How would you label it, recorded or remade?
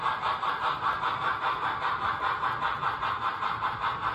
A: recorded